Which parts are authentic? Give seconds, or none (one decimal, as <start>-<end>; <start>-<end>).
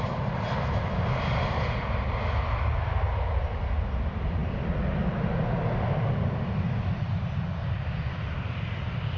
0.0-9.2